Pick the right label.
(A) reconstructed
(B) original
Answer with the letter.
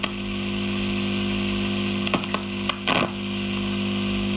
B